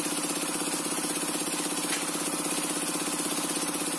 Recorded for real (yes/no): yes